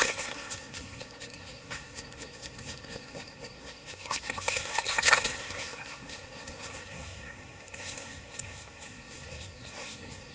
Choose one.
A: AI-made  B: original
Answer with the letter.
A